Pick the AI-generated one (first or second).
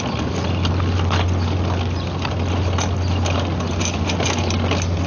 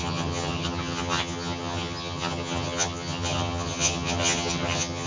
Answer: second